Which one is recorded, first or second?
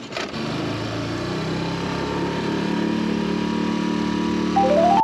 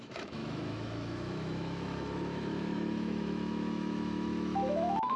first